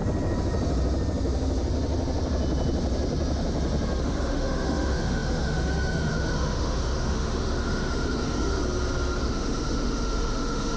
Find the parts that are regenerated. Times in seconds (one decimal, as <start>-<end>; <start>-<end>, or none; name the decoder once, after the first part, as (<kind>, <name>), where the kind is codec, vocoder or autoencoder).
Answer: 4.0-8.6 (autoencoder, DAC-VAE); 9.2-10.8